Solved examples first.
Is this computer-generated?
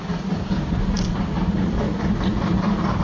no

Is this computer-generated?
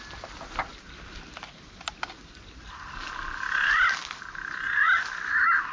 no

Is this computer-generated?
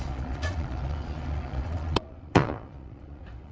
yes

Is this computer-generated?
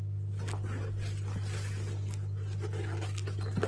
no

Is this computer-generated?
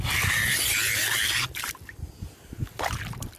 no